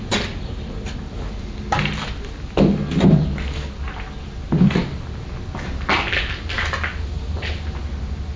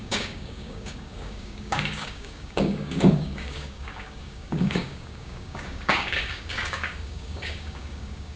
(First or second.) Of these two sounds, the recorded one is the first